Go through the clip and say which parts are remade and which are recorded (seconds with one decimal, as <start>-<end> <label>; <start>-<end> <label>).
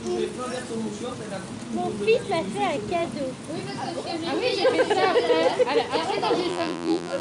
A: 0.0-6.5 recorded; 6.5-7.2 remade